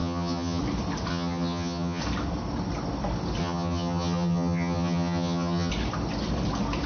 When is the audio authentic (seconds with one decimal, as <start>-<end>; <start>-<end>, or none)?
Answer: 0.6-1.1; 2.0-3.4; 5.7-6.9